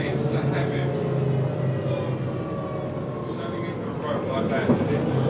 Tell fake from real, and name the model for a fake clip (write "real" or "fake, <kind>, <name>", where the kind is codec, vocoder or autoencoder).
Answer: real